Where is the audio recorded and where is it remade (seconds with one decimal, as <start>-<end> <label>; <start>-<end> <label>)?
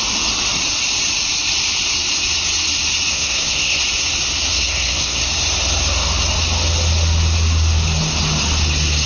0.0-3.1 recorded; 3.1-3.8 remade; 3.8-4.5 recorded; 4.5-5.2 remade; 5.2-9.1 recorded